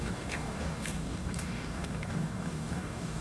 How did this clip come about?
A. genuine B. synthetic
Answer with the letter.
B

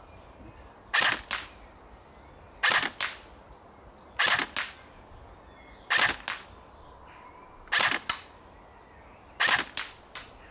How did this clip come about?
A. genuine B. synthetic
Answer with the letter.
A